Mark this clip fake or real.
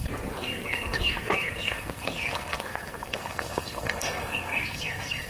fake